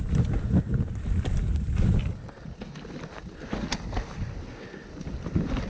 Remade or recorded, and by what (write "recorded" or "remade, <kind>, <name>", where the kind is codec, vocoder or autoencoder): recorded